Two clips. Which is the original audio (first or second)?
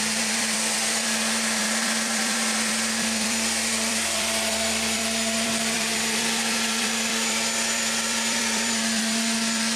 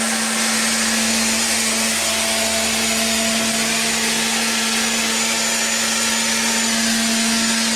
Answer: second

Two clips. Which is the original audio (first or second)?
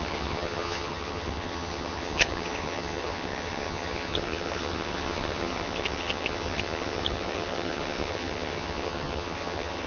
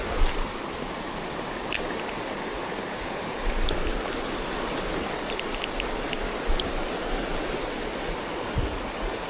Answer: second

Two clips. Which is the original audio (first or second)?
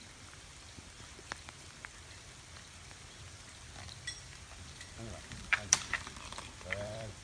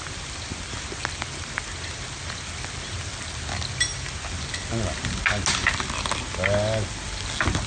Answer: second